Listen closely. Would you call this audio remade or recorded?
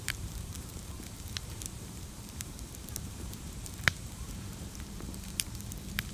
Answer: remade